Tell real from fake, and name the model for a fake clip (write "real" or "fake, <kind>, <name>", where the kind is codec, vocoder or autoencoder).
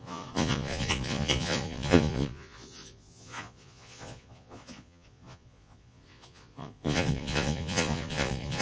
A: fake, vocoder, Vocos